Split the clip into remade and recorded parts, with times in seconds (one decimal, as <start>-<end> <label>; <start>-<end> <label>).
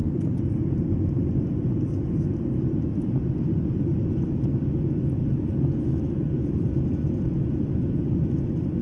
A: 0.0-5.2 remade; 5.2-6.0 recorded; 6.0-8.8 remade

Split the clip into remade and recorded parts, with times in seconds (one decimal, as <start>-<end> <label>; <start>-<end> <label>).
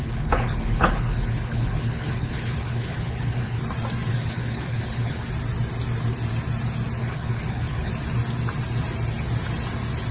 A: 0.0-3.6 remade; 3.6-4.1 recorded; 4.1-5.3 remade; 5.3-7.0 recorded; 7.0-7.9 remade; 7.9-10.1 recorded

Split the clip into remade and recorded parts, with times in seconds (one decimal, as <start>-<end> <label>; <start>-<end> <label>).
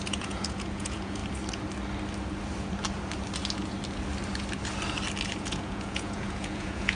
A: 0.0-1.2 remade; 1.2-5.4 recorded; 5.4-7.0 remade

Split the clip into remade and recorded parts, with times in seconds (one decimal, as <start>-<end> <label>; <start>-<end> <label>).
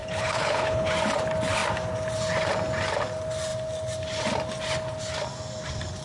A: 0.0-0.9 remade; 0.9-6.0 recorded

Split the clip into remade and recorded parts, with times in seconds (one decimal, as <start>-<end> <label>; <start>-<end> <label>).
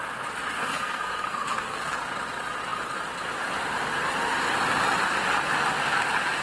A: 0.0-0.6 recorded; 0.6-1.8 remade; 1.8-6.4 recorded